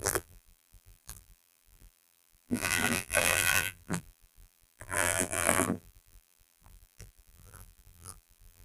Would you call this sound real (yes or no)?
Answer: no